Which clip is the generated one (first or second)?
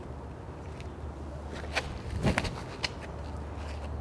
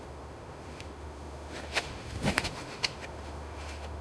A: second